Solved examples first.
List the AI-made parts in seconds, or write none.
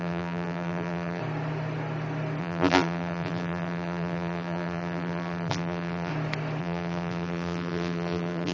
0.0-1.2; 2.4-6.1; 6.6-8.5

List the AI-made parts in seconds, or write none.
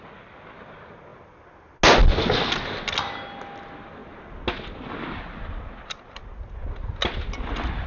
none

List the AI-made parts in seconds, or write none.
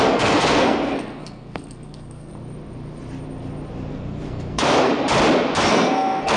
0.0-2.3; 3.9-4.9; 5.7-6.4